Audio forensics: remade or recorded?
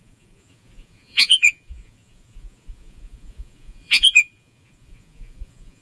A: remade